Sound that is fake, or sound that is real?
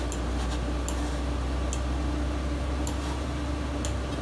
real